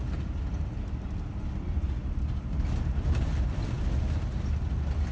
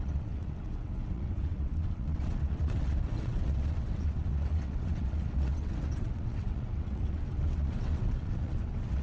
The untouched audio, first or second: first